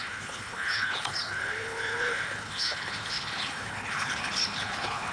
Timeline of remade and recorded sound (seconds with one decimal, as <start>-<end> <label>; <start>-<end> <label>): 0.0-5.1 remade